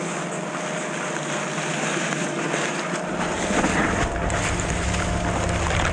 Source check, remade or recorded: recorded